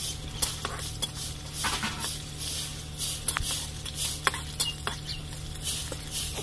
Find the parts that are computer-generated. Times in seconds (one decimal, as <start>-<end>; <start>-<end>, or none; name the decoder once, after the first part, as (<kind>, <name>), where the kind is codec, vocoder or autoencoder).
none

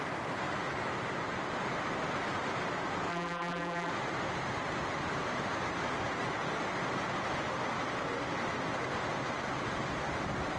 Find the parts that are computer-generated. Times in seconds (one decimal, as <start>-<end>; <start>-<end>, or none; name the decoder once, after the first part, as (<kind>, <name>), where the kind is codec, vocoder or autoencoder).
3.1-3.9 (vocoder, BigVGAN v2)